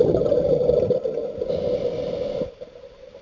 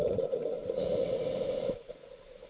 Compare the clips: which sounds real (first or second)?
first